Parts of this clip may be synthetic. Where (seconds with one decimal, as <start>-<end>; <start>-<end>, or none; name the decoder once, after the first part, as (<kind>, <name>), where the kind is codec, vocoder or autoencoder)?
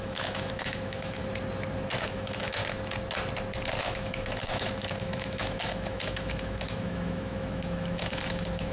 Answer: 0.0-1.2 (autoencoder, DAC-VAE); 2.0-2.6; 3.8-8.7